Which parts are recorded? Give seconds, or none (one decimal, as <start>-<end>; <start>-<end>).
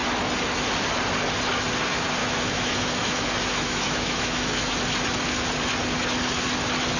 0.0-2.2; 4.7-7.0